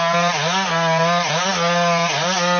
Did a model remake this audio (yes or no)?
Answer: no